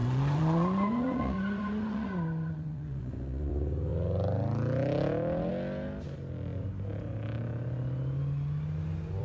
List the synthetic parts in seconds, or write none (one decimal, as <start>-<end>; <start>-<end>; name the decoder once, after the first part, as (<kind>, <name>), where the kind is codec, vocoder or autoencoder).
0.0-3.5 (vocoder, Vocos)